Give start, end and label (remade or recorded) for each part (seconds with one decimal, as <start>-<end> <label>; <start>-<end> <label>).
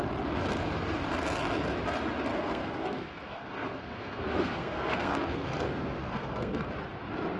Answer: 0.0-2.3 recorded; 2.3-6.7 remade; 6.7-7.4 recorded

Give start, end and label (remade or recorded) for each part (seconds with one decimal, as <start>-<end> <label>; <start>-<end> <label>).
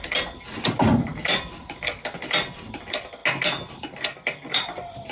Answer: 0.0-3.2 remade; 3.2-3.7 recorded; 3.7-5.1 remade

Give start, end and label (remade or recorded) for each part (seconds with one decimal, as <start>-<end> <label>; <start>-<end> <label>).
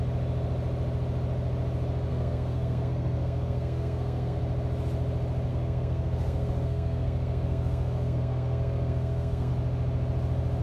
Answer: 0.0-2.1 recorded; 2.1-4.4 remade; 4.4-5.5 recorded; 5.5-9.5 remade; 9.5-10.6 recorded